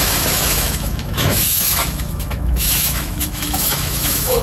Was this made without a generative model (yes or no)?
no